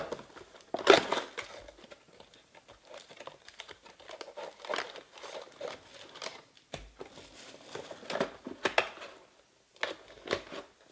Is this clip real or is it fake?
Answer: real